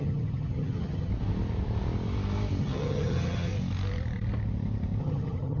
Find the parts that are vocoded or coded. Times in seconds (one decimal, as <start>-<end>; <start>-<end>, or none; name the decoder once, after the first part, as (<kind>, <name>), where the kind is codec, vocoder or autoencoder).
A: 0.0-1.1 (vocoder, HiFi-GAN); 2.6-3.5; 5.0-5.6